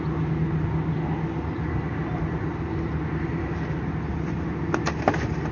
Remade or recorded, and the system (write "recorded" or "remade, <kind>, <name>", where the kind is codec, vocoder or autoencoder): recorded